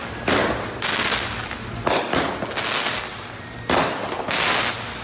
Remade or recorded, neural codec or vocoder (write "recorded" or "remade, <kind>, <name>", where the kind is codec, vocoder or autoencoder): recorded